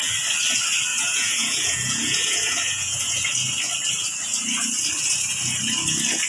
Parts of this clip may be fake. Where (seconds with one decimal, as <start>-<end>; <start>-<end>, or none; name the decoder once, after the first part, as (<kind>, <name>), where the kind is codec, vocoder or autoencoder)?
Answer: 0.9-3.3 (vocoder, Vocos)